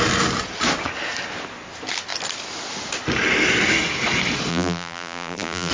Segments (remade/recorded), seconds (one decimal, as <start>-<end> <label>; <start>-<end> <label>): 0.0-4.5 recorded; 4.5-5.7 remade